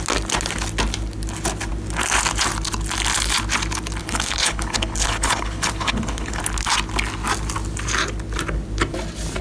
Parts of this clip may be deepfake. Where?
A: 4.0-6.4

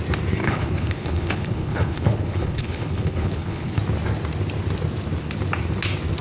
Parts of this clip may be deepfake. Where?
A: 0.4-3.8

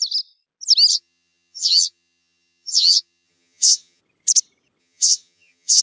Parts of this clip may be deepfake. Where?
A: 0.9-4.0; 4.8-5.8